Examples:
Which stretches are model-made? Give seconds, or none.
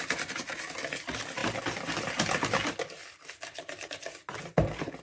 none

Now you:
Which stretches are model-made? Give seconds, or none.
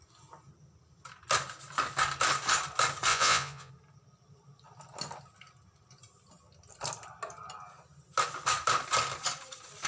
3.1-3.7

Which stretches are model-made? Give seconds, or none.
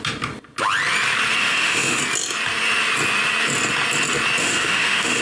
1.4-2.0; 4.4-5.2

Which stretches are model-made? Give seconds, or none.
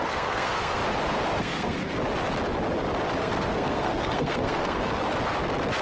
0.0-0.8; 1.4-1.8; 3.2-5.0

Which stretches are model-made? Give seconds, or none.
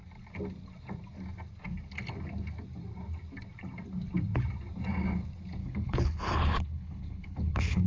5.6-7.9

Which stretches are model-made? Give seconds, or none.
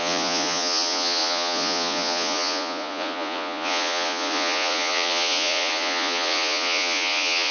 0.0-7.5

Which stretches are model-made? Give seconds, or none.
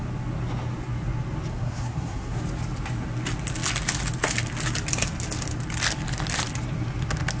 1.5-2.4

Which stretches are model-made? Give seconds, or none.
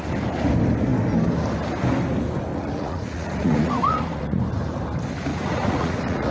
2.5-4.4; 5.3-6.3